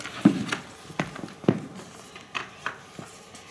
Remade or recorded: recorded